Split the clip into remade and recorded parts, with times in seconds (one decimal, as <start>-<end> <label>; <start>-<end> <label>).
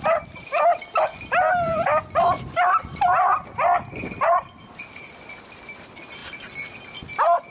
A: 0.0-0.7 recorded; 0.7-5.2 remade; 5.2-7.5 recorded